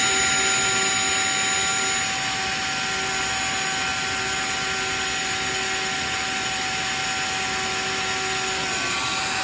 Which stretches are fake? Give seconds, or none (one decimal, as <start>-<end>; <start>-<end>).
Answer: none